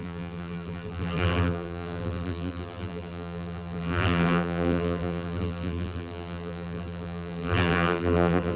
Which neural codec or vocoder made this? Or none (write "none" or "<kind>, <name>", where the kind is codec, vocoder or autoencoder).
vocoder, BigVGAN v2